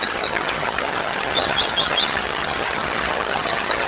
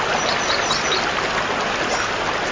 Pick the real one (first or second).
second